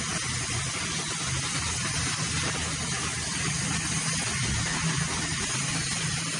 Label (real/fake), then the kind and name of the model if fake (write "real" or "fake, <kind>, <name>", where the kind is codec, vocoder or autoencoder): real